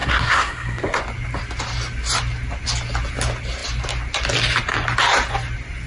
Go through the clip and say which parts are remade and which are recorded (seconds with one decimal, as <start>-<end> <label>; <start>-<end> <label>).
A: 0.0-1.0 remade; 1.0-5.9 recorded